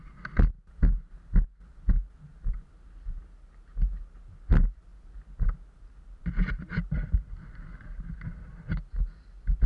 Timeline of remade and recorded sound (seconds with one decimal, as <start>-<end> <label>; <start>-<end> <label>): 0.0-9.7 recorded